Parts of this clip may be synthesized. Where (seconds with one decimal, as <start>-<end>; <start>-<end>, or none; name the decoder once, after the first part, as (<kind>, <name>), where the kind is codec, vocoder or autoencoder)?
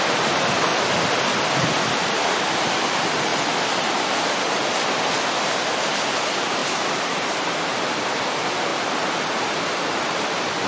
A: 0.0-0.7 (vocoder, BigVGAN v2); 1.5-3.3; 5.3-10.7